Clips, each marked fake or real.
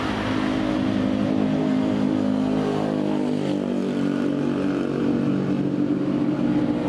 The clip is real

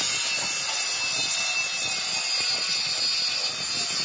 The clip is real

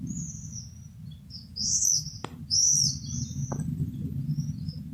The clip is real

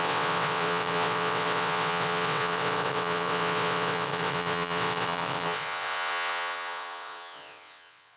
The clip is fake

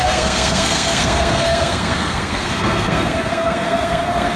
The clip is fake